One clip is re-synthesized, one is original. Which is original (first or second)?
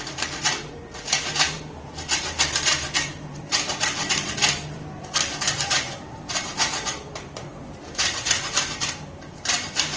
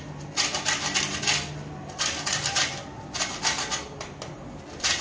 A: second